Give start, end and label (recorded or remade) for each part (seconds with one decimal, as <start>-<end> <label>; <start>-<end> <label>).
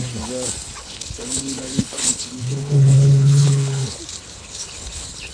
0.0-0.8 recorded; 0.8-4.0 remade; 4.0-4.4 recorded; 4.4-5.3 remade